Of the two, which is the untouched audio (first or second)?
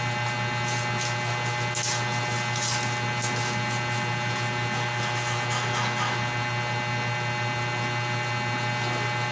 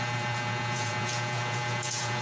first